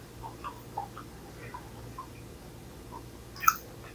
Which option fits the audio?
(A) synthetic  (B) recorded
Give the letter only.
B